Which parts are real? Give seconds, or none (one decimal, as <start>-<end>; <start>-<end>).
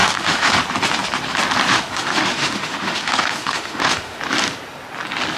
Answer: 0.6-1.7; 4.2-5.4